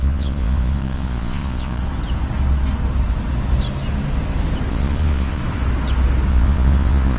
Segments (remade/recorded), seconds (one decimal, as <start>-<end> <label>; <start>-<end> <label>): 0.0-1.8 remade; 1.8-4.7 recorded; 4.7-5.4 remade; 5.4-6.3 recorded; 6.3-7.2 remade